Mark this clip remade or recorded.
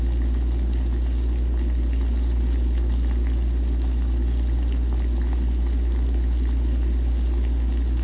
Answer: recorded